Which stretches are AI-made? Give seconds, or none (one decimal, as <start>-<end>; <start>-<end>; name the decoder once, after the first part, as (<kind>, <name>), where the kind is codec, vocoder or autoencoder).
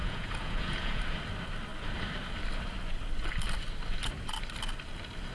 0.0-1.0 (vocoder, Vocos)